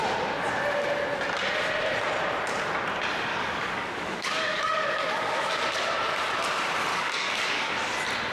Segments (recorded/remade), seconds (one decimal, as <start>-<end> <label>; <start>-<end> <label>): 0.0-3.3 recorded; 3.3-5.5 remade; 5.5-6.9 recorded; 6.9-7.7 remade; 7.7-8.3 recorded